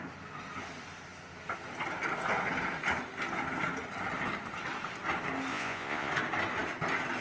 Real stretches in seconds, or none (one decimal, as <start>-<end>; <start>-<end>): 0.0-5.5; 6.1-7.2